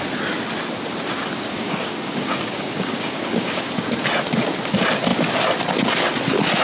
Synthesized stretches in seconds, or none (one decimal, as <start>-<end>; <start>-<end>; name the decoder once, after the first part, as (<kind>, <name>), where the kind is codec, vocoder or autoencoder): 1.5-3.7 (codec, DAC)